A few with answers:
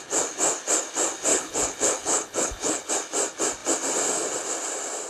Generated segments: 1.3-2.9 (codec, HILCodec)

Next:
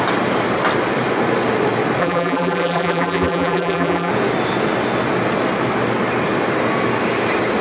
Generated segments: 2.0-4.1 (vocoder, BigVGAN v2)

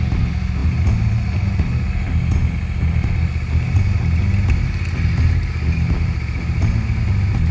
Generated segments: none

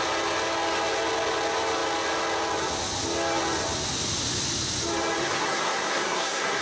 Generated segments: 5.2-6.6 (codec, SNAC)

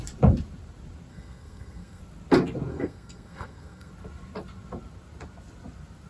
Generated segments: 1.1-2.0 (codec, SNAC); 2.7-3.9

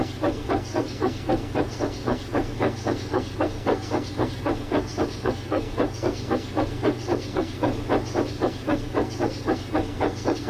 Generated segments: 0.0-7.7 (codec, SNAC); 8.3-10.5